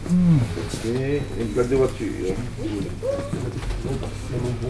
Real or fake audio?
real